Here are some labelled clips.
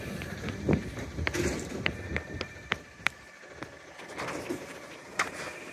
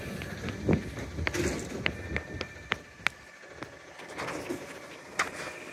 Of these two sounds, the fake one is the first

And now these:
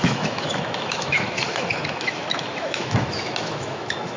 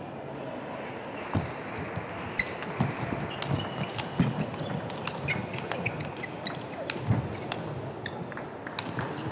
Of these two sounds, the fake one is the first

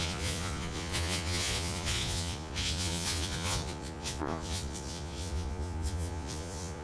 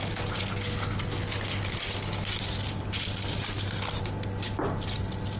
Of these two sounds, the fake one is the first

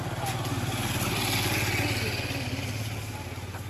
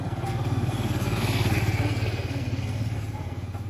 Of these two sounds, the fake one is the second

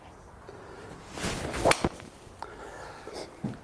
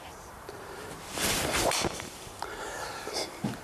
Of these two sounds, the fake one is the second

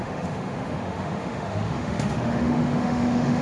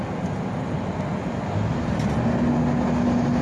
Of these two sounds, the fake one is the first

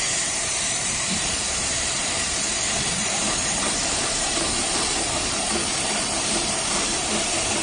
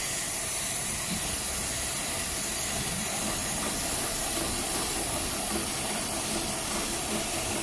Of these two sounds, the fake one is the first